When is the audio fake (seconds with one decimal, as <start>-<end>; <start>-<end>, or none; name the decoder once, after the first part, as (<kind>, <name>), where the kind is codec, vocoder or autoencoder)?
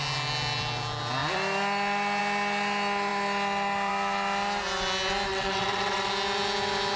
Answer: 5.3-6.1 (vocoder, WaveNeXt)